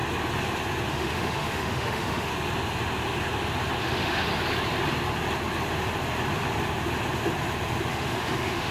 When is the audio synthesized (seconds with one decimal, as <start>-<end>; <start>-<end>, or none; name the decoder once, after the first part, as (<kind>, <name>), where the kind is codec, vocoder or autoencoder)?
0.9-2.3 (autoencoder, DAC-VAE); 3.8-4.3; 7.9-8.7